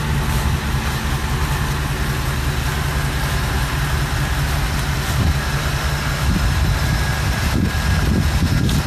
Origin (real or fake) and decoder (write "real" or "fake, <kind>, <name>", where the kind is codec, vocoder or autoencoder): real